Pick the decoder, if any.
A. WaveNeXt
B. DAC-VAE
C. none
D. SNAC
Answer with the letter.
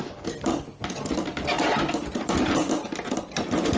C